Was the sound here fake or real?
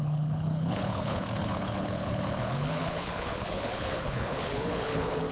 fake